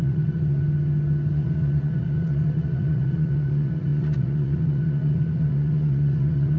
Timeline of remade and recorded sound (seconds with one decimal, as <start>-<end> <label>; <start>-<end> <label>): 0.0-0.6 remade; 0.6-1.3 recorded; 1.3-6.6 remade

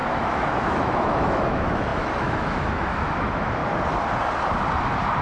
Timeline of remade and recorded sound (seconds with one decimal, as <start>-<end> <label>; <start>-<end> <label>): 0.0-3.6 remade; 3.6-5.2 recorded

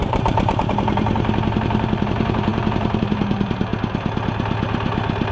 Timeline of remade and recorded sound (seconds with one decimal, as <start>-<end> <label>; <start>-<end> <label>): 0.0-3.7 remade; 3.7-5.3 recorded